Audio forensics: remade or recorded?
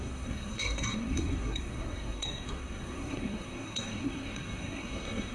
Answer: remade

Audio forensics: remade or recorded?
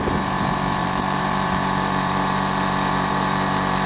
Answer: remade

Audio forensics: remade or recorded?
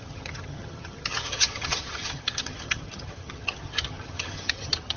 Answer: remade